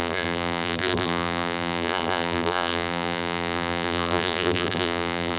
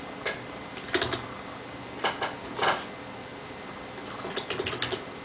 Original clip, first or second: second